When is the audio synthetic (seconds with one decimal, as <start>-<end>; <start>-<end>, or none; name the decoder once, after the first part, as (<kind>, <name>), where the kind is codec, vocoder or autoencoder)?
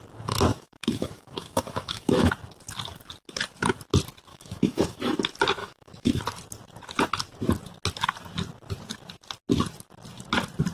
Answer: 0.5-2.3 (autoencoder, DAC-VAE); 4.3-5.0; 5.6-6.2